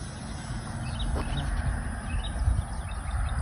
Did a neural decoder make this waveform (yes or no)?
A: no